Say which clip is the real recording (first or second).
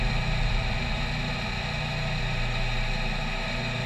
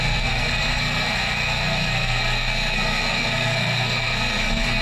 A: first